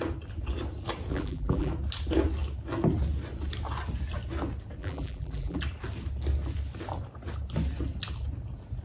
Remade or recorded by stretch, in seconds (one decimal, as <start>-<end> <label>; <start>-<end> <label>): 0.0-1.1 recorded; 1.1-1.7 remade; 1.7-4.8 recorded; 4.8-5.6 remade; 5.6-8.8 recorded